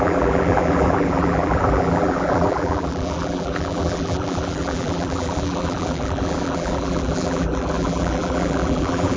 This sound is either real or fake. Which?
fake